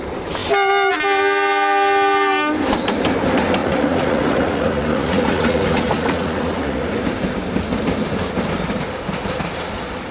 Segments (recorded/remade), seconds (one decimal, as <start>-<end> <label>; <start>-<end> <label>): 0.0-3.6 recorded; 3.6-6.9 remade; 6.9-10.1 recorded

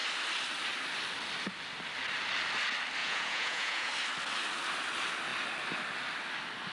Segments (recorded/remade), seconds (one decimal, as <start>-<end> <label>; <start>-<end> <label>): 0.0-3.0 recorded; 3.0-3.9 remade; 3.9-6.7 recorded

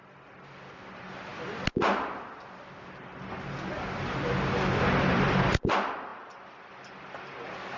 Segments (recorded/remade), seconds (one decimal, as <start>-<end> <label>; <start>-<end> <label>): 0.0-7.8 recorded

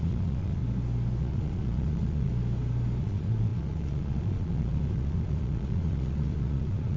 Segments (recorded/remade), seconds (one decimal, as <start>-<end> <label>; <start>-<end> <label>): 0.0-0.6 remade; 0.6-1.2 recorded; 1.2-2.3 remade; 2.3-3.0 recorded; 3.0-7.0 remade

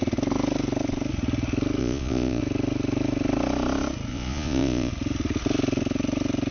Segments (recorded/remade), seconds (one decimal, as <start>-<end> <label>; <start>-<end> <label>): 0.0-1.8 recorded; 1.8-2.4 remade; 2.4-4.1 recorded; 4.1-4.9 remade; 4.9-6.5 recorded

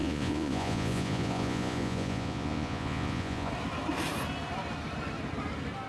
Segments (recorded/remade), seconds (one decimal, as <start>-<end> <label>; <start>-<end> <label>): 0.0-3.5 remade; 3.5-5.9 recorded